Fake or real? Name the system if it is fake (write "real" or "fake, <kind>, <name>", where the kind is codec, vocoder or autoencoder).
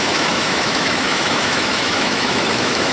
fake, autoencoder, DAC-VAE